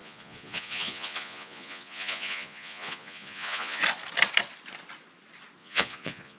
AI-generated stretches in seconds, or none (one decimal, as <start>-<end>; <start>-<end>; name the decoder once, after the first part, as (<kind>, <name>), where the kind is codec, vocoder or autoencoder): 0.0-3.8 (vocoder, Vocos); 5.6-6.4